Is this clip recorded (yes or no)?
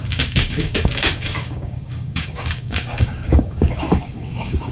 no